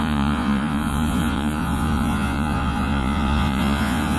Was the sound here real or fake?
fake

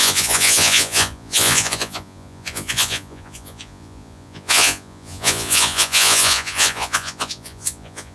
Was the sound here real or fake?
fake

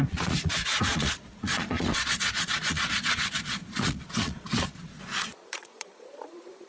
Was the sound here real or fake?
fake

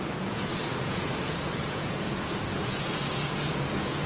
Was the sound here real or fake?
fake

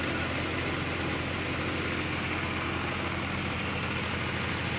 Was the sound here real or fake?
real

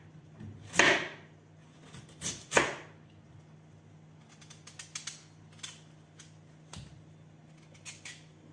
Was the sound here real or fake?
real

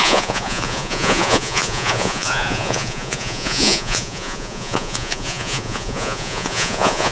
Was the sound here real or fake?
fake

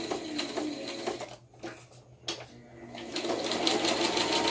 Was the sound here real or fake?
real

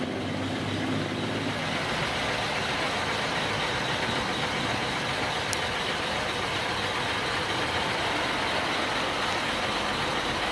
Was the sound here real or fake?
real